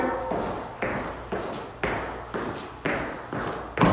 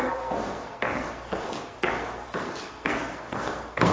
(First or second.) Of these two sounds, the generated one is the second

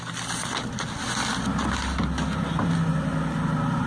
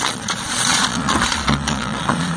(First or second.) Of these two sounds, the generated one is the second